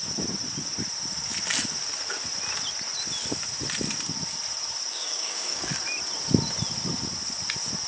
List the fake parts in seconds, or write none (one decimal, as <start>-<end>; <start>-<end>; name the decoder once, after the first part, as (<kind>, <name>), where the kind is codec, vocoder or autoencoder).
4.9-5.7 (codec, DAC)